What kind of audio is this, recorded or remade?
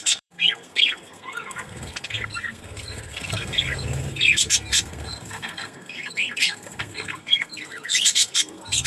remade